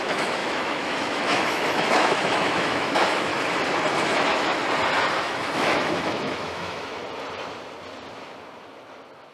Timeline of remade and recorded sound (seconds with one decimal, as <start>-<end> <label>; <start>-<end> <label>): 0.0-3.3 remade; 3.3-4.0 recorded; 4.0-4.6 remade; 4.6-5.2 recorded; 5.2-7.0 remade; 7.0-9.3 recorded